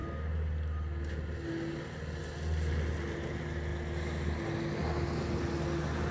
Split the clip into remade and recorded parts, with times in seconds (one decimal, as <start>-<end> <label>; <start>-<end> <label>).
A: 0.0-6.1 recorded